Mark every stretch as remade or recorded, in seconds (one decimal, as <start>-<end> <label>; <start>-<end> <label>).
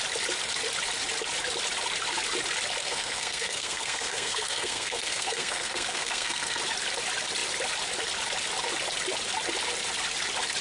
0.0-2.8 recorded; 2.8-6.6 remade; 6.6-10.6 recorded